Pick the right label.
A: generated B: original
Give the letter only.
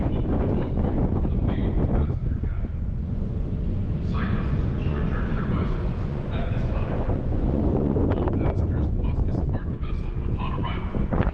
A